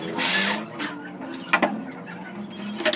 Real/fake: real